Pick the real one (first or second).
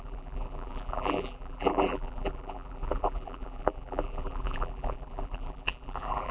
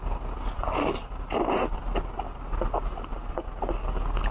second